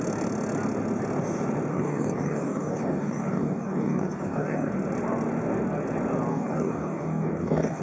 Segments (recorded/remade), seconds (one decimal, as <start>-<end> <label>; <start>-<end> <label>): 0.0-1.7 recorded; 1.7-4.7 remade; 4.7-6.3 recorded; 6.3-7.8 remade